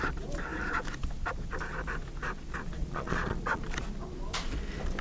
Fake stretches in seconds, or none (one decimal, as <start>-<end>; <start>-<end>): 2.8-3.6